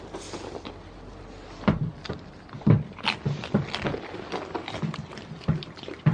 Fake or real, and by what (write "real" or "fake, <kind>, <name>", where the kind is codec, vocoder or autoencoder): real